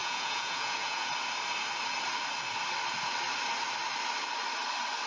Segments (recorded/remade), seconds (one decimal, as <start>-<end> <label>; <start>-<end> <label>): 0.0-1.1 remade; 1.1-5.1 recorded